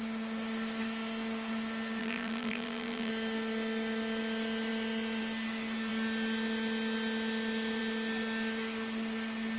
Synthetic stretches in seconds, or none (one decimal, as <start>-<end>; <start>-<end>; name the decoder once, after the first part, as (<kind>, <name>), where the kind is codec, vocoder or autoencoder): 2.0-3.1 (vocoder, BigVGAN v2)